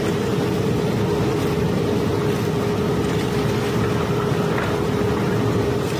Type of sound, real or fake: real